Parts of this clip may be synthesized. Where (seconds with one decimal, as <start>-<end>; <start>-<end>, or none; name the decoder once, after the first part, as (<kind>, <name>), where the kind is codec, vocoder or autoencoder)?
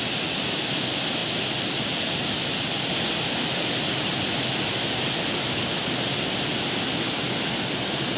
none